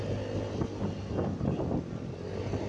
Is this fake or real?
real